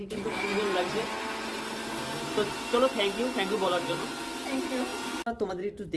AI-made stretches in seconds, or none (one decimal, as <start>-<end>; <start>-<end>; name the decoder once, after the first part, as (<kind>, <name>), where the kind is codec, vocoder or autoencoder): none